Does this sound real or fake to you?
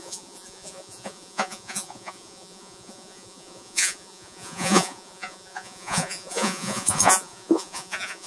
fake